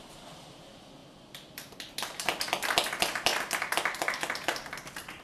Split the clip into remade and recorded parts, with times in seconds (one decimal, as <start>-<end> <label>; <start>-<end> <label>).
0.0-5.2 recorded